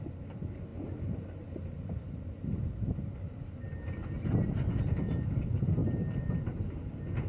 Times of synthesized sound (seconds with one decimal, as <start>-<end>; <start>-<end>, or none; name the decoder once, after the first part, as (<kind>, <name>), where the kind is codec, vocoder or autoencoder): none